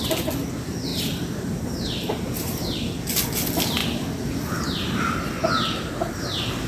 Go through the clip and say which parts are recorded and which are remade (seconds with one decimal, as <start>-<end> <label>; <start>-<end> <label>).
0.0-0.9 recorded; 0.9-2.8 remade; 2.8-6.7 recorded